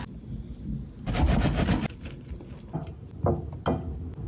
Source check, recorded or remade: recorded